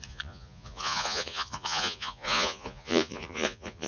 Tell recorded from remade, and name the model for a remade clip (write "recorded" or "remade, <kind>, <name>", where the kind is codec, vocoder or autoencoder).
remade, vocoder, Vocos